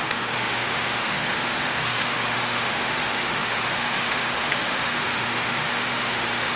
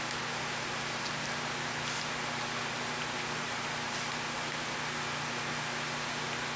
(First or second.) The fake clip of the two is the first